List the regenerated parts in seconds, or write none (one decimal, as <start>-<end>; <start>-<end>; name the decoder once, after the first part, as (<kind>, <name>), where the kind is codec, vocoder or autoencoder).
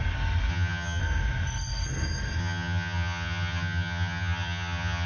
0.5-1.0 (vocoder, HiFi-GAN); 2.4-5.1